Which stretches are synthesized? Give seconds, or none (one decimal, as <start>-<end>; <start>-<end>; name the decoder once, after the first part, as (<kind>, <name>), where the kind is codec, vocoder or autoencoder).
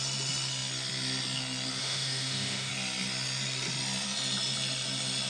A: 1.8-2.7 (autoencoder, DAC-VAE)